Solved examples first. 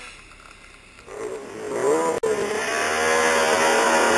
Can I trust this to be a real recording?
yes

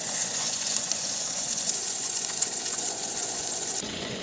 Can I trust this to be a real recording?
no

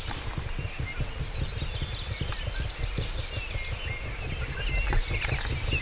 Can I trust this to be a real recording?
yes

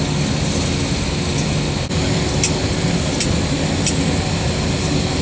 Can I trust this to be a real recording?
yes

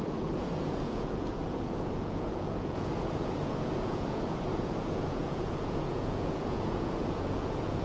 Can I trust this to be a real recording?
no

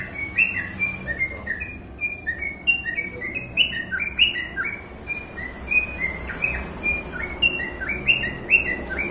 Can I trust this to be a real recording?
yes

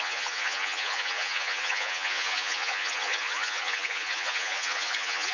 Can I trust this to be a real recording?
no